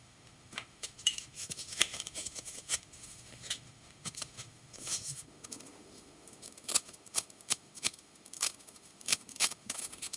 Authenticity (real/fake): fake